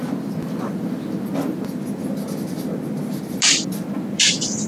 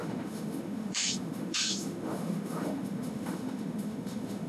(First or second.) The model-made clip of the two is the second